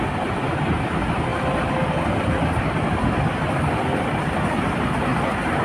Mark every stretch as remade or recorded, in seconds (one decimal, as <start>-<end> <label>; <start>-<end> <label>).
0.0-5.6 recorded

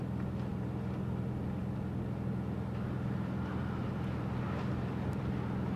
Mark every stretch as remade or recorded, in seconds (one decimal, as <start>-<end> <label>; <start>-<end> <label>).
0.0-5.8 recorded

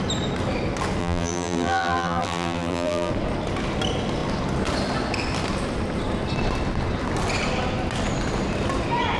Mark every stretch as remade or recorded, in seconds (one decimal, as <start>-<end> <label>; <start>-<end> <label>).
0.0-1.0 recorded; 1.0-3.1 remade; 3.1-9.2 recorded

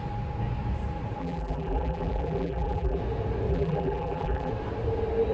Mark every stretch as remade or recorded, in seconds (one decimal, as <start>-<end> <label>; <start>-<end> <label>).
0.0-1.2 recorded; 1.2-3.0 remade; 3.0-3.5 recorded; 3.5-4.5 remade; 4.5-5.3 recorded

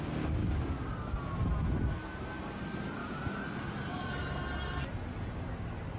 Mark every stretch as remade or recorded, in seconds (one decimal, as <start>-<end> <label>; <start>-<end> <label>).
0.0-6.0 recorded

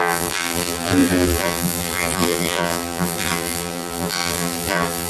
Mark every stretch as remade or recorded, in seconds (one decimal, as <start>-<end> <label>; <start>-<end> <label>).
0.0-5.1 remade